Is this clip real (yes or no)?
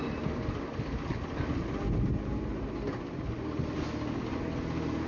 yes